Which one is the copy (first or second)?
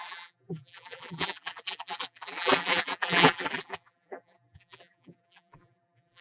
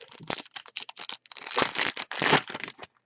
first